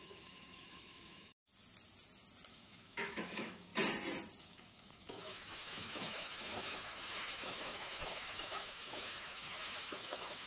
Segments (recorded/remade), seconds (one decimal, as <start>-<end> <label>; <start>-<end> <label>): 0.0-1.5 remade; 1.5-2.5 recorded; 2.5-3.7 remade; 3.7-4.4 recorded; 4.4-10.5 remade

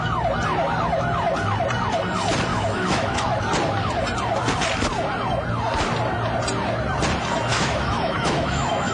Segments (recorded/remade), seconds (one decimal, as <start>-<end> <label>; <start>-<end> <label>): 0.0-2.5 recorded; 2.5-3.4 remade; 3.4-7.5 recorded; 7.5-8.9 remade